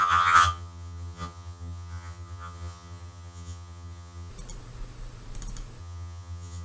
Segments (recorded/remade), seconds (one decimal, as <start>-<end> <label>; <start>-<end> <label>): 0.0-4.3 remade; 4.3-5.8 recorded; 5.8-6.6 remade